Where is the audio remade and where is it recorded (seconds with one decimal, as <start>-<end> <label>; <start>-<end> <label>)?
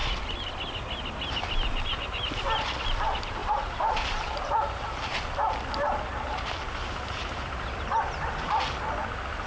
0.0-3.4 recorded; 3.4-5.3 remade; 5.3-7.2 recorded; 7.2-8.1 remade; 8.1-9.5 recorded